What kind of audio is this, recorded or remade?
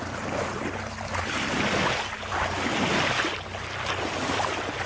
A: recorded